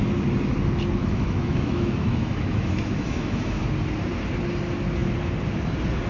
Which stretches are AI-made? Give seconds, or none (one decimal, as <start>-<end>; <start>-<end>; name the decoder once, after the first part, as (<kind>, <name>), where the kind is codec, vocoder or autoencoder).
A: 1.0-3.6 (autoencoder, DAC-VAE)